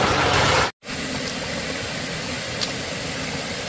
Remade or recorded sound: recorded